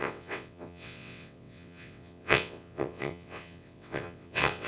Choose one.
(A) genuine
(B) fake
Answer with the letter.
B